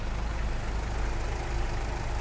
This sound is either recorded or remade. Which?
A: recorded